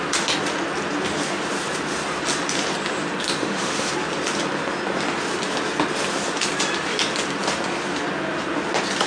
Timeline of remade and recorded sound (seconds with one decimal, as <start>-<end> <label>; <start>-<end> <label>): 0.0-3.4 recorded; 3.4-3.9 remade; 3.9-9.1 recorded

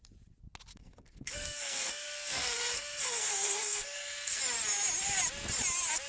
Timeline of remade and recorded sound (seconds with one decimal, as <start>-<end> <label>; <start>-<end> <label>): 0.0-0.7 recorded; 0.7-4.4 remade; 4.4-6.1 recorded

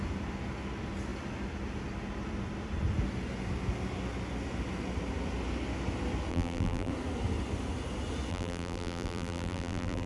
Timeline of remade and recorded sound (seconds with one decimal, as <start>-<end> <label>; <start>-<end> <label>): 0.0-6.3 recorded; 6.3-6.9 remade; 6.9-8.3 recorded; 8.3-10.1 remade

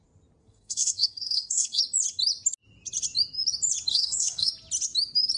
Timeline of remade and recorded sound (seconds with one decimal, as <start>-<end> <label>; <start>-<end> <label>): 0.0-0.4 recorded; 0.4-1.8 remade; 1.8-3.9 recorded; 3.9-4.5 remade; 4.5-5.4 recorded

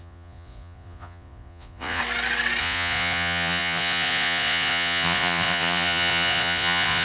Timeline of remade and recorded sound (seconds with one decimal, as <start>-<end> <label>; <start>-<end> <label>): 0.0-2.0 remade; 2.0-2.6 recorded; 2.6-7.0 remade

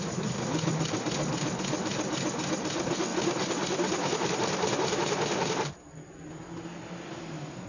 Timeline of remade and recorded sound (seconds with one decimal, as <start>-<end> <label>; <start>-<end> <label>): 0.0-7.7 recorded

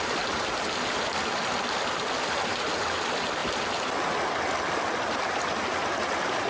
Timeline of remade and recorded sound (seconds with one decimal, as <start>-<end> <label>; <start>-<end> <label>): 0.0-6.5 recorded

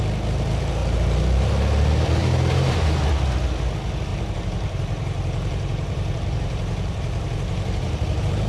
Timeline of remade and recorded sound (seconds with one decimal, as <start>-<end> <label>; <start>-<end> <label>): 0.0-2.2 recorded; 2.2-3.1 remade; 3.1-4.1 recorded; 4.1-8.5 remade